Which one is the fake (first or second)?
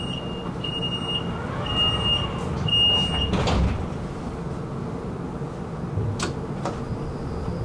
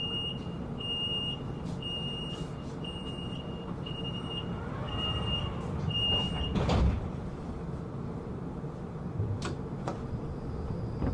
second